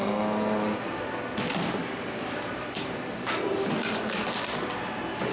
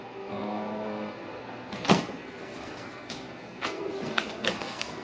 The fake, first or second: second